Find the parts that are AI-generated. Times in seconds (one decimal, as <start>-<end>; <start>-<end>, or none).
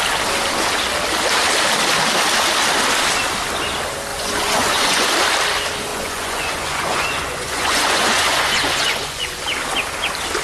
4.1-5.1; 5.9-9.4